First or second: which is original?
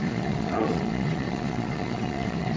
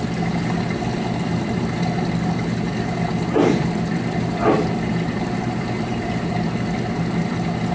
second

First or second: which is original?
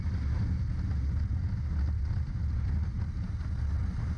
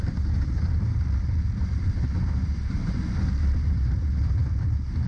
first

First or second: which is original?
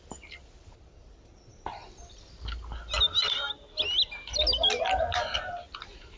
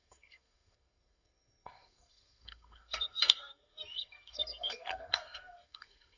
first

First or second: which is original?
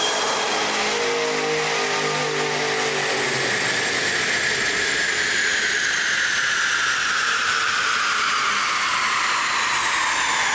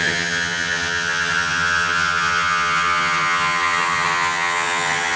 first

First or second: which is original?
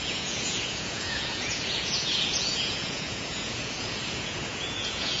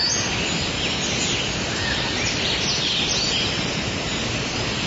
second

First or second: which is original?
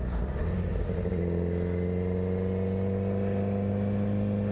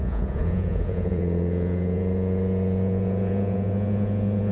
first